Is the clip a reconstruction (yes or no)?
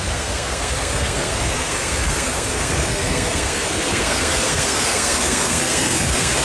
yes